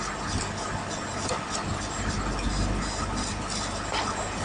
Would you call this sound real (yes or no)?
yes